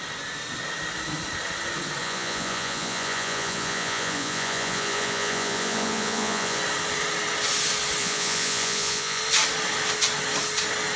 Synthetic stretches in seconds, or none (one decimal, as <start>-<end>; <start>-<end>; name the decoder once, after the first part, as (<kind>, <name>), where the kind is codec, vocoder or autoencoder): 2.0-6.6 (vocoder, Vocos); 8.0-9.2